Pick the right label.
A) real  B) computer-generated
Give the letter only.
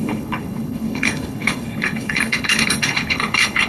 B